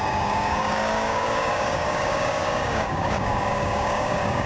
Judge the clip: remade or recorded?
remade